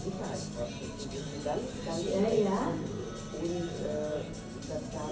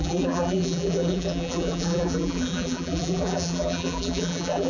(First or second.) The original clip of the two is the first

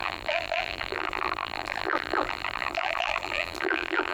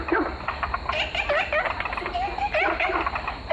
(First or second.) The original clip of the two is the second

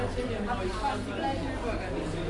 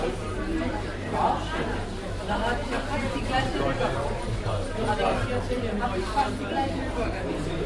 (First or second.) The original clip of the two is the first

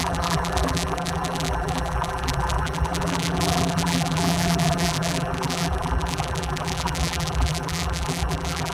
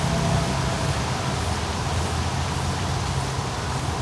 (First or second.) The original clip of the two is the second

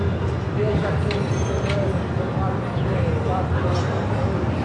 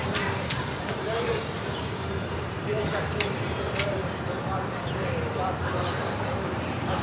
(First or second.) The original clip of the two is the first